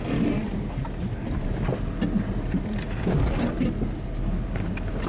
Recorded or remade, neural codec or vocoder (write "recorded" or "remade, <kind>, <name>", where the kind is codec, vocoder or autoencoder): recorded